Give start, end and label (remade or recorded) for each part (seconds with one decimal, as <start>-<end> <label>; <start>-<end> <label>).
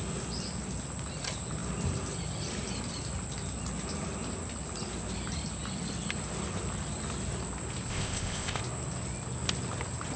0.0-7.9 recorded; 7.9-8.6 remade; 8.6-10.2 recorded